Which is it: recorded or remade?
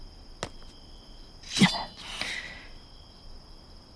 recorded